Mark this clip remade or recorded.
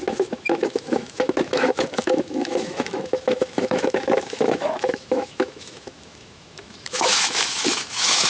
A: remade